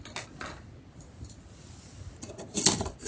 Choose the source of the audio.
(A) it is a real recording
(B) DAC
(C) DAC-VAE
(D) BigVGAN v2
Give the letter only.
A